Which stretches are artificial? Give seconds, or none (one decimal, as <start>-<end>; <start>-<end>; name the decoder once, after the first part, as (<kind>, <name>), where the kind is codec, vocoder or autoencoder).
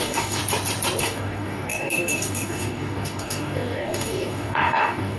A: 0.0-0.4 (codec, DAC); 1.0-5.2